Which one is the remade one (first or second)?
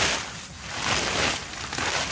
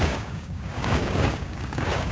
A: second